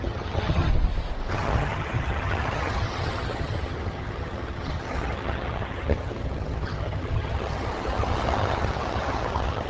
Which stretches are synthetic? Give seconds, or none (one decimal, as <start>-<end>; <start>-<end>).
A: 0.0-0.7; 1.3-9.7